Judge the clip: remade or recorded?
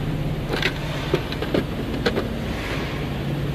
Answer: recorded